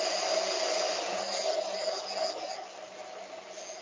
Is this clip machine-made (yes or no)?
no